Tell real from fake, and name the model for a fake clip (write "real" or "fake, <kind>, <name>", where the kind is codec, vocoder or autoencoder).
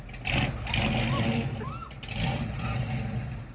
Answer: real